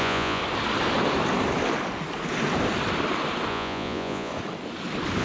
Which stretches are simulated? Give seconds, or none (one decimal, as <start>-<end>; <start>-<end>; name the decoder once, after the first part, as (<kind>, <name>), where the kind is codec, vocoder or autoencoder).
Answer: 0.0-0.4 (vocoder, Vocos); 3.5-4.3